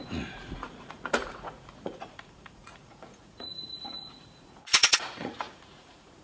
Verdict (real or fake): fake